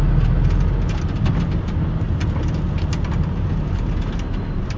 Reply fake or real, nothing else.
real